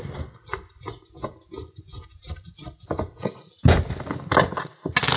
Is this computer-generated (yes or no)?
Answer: no